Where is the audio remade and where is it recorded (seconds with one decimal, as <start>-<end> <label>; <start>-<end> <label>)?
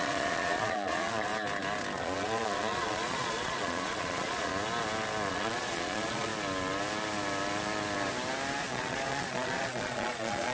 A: 0.0-1.3 remade; 1.3-2.0 recorded; 2.0-4.5 remade; 4.5-5.3 recorded; 5.3-6.3 remade; 6.3-8.6 recorded; 8.6-10.5 remade